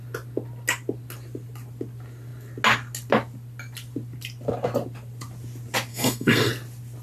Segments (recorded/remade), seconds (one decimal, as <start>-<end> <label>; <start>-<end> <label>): 0.0-5.9 recorded; 5.9-6.5 remade; 6.5-7.0 recorded